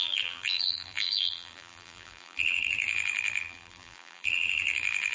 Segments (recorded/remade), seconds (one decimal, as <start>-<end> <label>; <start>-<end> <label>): 0.0-5.1 remade